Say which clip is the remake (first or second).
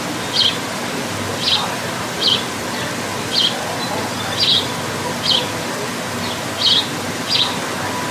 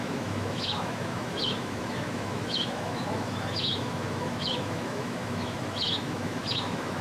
second